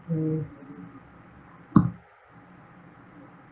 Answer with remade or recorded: recorded